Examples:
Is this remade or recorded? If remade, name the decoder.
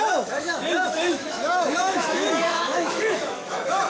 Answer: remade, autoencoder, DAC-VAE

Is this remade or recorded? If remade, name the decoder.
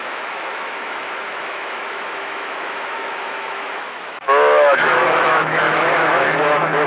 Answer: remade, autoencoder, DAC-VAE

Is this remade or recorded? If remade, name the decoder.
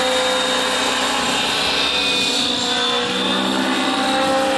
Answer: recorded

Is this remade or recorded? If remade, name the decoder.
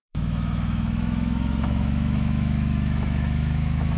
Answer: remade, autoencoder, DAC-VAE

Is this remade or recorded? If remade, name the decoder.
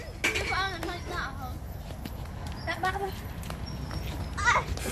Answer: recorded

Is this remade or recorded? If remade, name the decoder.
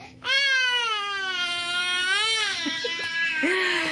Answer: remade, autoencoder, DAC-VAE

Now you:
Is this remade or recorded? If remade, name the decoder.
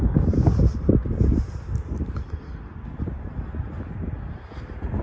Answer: recorded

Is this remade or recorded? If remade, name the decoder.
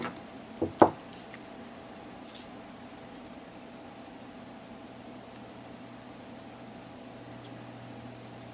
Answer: recorded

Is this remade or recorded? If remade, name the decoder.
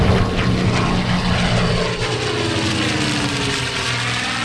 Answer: recorded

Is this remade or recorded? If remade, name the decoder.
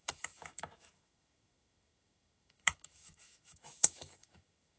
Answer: remade, autoencoder, DAC-VAE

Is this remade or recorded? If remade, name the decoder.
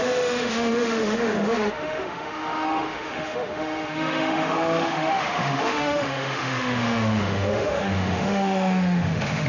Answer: remade, autoencoder, DAC-VAE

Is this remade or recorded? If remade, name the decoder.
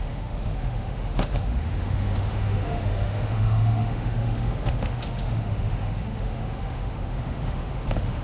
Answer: remade, autoencoder, DAC-VAE